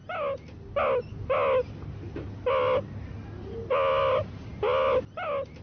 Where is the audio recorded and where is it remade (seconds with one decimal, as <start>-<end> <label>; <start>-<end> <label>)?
0.0-5.6 recorded